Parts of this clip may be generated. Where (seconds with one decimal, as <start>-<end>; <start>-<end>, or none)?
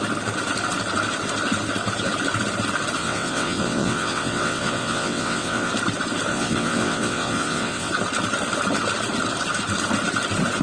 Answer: 3.0-5.7; 6.3-7.9